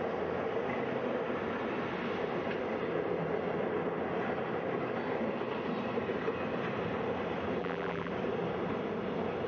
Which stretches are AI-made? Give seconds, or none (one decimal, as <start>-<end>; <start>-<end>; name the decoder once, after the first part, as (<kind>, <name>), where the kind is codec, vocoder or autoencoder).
7.6-8.1 (vocoder, BigVGAN v2)